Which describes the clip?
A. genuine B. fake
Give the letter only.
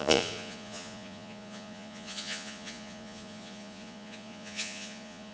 B